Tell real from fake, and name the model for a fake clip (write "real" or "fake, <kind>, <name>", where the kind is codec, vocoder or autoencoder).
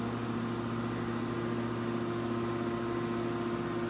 real